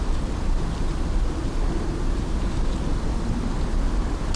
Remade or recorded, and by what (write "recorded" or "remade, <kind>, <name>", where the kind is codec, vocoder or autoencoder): recorded